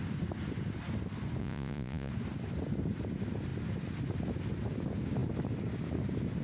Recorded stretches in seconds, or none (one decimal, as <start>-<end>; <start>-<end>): 0.0-1.4; 2.1-6.4